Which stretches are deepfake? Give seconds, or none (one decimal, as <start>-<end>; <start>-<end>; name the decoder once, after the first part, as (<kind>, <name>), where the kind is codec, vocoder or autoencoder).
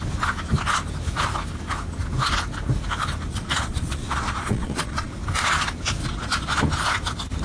3.3-5.1 (vocoder, Vocos); 6.0-6.6